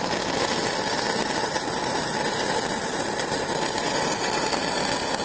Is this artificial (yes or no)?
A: no